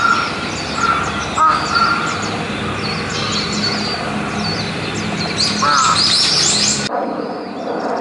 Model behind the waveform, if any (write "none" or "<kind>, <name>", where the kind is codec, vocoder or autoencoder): none